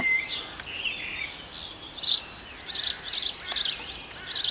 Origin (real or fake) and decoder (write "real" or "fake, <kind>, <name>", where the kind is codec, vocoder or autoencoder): real